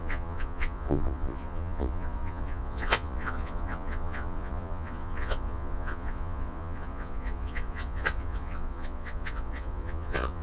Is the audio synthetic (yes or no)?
yes